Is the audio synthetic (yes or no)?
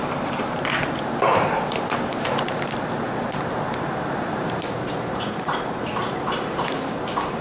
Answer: yes